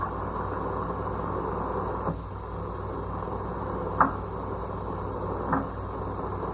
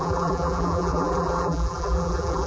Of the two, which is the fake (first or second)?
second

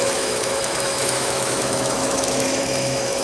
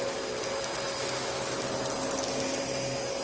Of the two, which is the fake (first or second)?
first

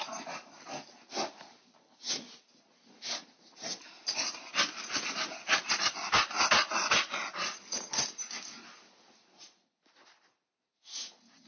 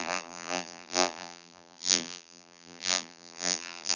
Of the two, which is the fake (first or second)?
second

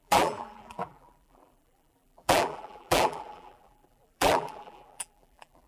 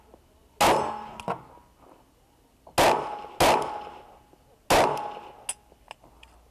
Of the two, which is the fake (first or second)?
first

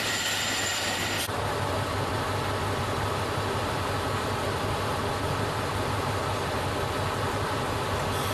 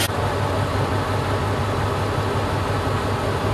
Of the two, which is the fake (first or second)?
first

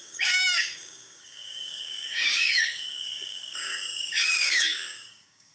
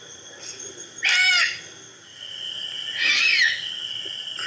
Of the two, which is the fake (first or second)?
first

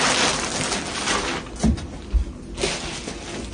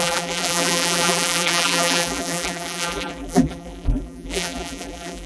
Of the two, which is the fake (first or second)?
second